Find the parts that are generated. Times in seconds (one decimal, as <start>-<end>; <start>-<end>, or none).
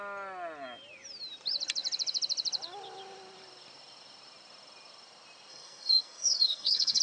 5.5-7.0